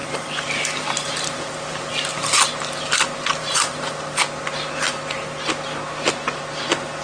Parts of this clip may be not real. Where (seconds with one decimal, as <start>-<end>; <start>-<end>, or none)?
0.0-2.5; 3.4-4.2